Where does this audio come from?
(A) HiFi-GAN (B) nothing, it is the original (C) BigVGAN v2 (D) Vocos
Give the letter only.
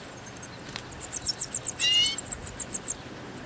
B